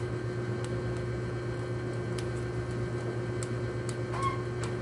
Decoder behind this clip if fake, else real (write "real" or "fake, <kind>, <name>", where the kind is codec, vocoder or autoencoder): real